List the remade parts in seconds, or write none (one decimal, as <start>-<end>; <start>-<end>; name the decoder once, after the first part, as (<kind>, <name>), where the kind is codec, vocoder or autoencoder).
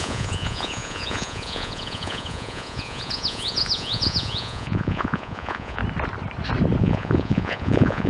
0.0-5.8 (vocoder, Vocos); 6.8-8.1